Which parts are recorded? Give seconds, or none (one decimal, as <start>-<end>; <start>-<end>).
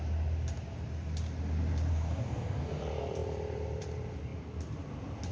0.0-1.9; 2.8-5.3